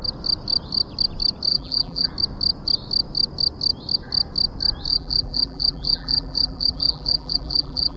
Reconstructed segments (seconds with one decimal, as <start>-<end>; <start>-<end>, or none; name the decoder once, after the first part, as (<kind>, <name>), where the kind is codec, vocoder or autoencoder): 1.5-2.1 (vocoder, BigVGAN v2); 4.9-8.0